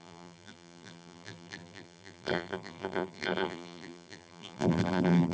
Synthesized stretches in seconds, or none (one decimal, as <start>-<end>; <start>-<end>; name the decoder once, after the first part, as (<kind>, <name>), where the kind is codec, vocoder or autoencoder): 0.0-5.3 (vocoder, BigVGAN v2)